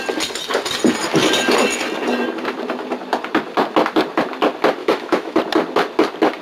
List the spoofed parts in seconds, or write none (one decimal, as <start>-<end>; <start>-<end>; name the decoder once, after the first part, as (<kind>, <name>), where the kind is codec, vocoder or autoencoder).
4.8-5.4 (autoencoder, DAC-VAE)